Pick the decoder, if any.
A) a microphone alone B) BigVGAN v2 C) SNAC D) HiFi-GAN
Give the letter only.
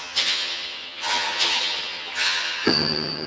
D